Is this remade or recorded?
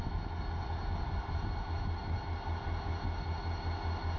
recorded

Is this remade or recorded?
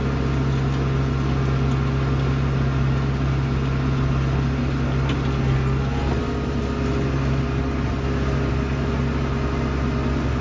recorded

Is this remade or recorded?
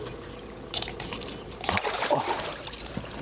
recorded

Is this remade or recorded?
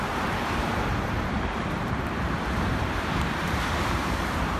remade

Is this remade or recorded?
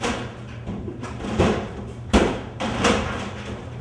remade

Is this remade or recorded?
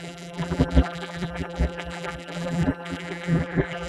remade